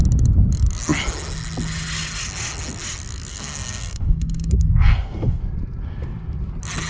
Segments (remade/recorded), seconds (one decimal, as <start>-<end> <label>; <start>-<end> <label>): 0.0-3.3 recorded; 3.3-5.4 remade; 5.4-6.9 recorded